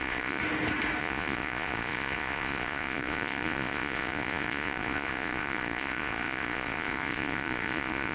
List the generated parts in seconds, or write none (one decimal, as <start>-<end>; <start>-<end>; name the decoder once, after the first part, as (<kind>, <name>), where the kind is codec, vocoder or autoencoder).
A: 0.0-0.4 (vocoder, Vocos); 1.0-8.1